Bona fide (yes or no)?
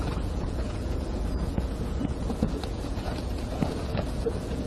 no